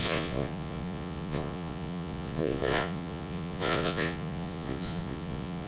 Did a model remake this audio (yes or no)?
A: yes